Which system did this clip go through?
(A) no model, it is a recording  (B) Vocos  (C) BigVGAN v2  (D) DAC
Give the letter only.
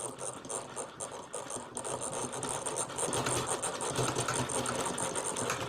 A